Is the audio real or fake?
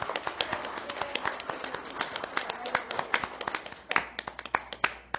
real